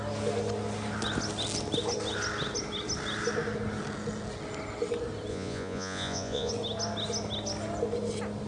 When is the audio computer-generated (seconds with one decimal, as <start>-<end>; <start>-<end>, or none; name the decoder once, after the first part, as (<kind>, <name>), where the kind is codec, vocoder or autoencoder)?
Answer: 5.3-6.5 (vocoder, Vocos)